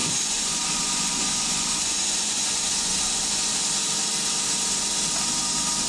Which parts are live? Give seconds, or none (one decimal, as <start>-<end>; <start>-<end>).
3.5-5.9